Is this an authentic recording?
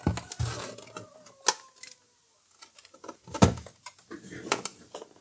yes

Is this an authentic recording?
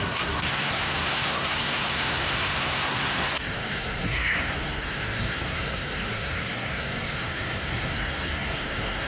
no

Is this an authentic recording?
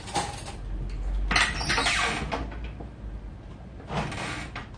yes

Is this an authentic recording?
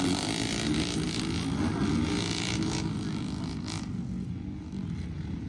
yes